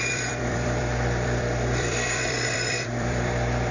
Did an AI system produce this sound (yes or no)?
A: yes